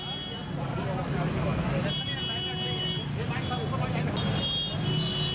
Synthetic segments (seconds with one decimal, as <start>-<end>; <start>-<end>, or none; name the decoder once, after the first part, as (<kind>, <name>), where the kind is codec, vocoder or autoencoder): none